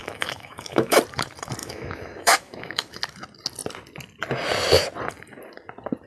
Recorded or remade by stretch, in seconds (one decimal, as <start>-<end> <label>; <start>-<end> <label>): 0.0-1.0 remade; 1.0-1.6 recorded; 1.6-3.0 remade; 3.0-6.1 recorded